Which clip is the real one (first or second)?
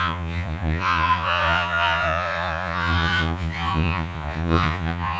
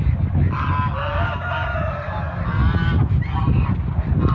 second